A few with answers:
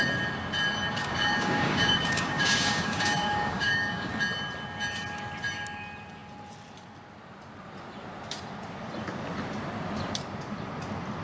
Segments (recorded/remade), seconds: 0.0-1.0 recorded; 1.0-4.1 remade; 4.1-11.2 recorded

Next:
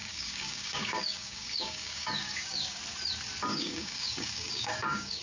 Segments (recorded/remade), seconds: 0.0-2.8 remade; 2.8-3.5 recorded; 3.5-5.2 remade

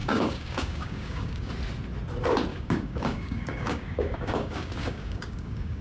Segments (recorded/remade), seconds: 0.0-1.5 remade; 1.5-2.5 recorded; 2.5-5.8 remade

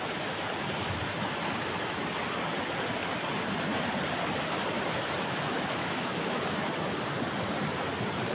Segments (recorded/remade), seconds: 0.0-5.8 recorded; 5.8-6.3 remade; 6.3-8.3 recorded

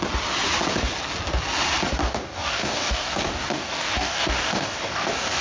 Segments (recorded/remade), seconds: 0.0-2.0 recorded; 2.0-5.4 remade

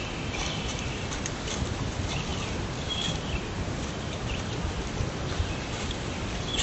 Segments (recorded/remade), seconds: 0.0-6.6 recorded